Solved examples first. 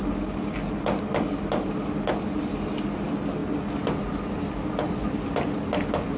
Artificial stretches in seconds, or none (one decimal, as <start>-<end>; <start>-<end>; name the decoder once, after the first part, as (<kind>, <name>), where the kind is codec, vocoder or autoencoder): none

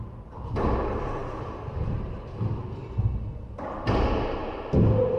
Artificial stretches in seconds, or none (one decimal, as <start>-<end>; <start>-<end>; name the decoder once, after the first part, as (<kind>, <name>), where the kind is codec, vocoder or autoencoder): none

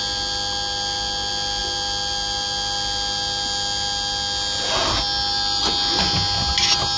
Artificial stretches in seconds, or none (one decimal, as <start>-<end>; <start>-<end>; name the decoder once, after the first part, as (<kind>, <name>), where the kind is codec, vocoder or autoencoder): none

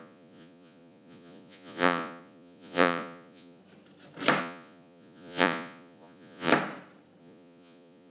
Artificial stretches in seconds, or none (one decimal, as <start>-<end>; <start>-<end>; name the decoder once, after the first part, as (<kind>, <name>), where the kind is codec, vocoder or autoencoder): 0.0-3.6 (vocoder, Vocos); 4.4-6.5; 7.2-8.1

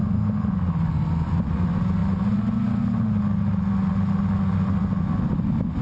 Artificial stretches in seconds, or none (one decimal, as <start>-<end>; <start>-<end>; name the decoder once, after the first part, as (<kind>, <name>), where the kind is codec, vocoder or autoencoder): none